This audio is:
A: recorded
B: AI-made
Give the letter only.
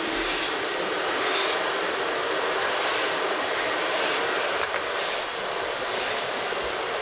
B